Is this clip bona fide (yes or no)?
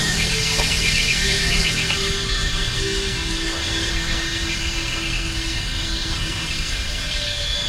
no